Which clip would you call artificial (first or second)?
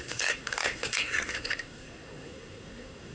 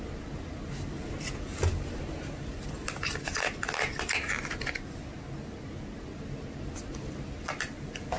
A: first